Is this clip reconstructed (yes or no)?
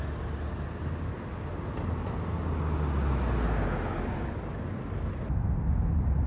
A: no